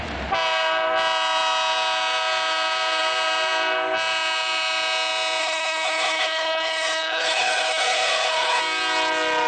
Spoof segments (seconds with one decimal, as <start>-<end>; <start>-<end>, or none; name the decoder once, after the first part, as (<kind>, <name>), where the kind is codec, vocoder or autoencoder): 5.4-8.6 (codec, HILCodec)